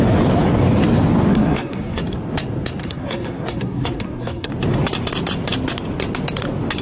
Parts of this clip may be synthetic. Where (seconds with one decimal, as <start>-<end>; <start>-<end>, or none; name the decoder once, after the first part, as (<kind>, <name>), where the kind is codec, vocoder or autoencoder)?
1.3-2.0 (codec, SNAC); 2.8-4.5